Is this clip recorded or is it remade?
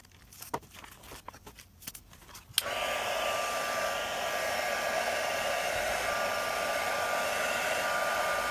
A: recorded